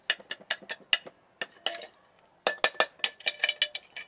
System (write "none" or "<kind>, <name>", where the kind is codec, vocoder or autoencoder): none